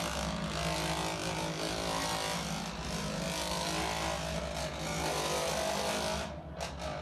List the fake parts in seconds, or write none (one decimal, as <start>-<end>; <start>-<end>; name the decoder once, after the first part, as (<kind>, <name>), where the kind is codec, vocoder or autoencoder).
none